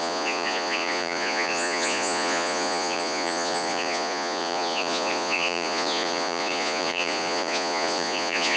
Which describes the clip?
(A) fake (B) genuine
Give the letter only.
A